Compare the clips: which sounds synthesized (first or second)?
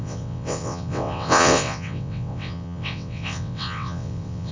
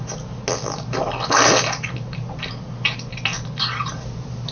first